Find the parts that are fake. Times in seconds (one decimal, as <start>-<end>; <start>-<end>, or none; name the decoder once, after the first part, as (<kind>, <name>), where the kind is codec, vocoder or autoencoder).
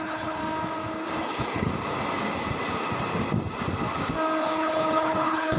0.0-0.4 (codec, HILCodec); 1.2-1.7; 4.4-5.6